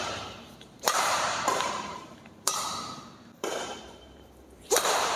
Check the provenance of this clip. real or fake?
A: fake